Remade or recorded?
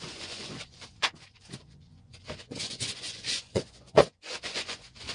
remade